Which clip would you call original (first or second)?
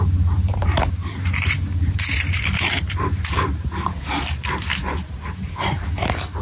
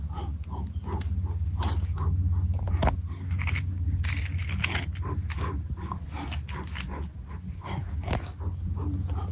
second